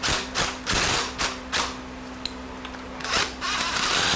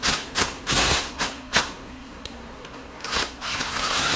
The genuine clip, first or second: first